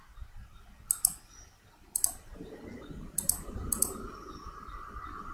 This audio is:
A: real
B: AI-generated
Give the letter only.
A